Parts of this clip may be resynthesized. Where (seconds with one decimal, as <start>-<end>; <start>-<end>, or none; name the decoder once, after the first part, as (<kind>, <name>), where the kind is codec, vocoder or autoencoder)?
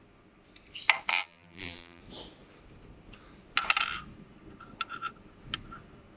1.1-2.0 (vocoder, BigVGAN v2)